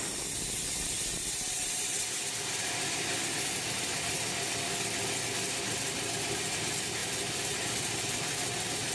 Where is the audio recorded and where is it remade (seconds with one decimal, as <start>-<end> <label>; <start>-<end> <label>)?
0.0-8.9 recorded